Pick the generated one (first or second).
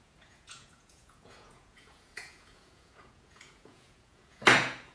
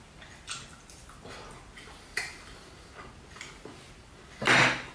first